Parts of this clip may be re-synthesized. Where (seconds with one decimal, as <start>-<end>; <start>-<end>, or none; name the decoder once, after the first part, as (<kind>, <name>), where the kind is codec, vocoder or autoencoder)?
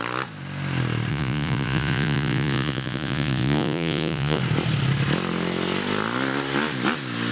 1.1-4.4 (vocoder, Vocos)